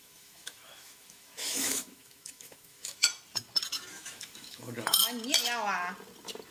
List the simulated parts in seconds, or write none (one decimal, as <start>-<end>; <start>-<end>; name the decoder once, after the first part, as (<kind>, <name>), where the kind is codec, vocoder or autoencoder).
0.0-3.1 (autoencoder, DAC-VAE); 3.9-5.0